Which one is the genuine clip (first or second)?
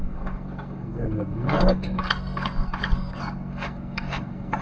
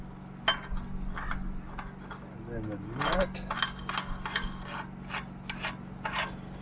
second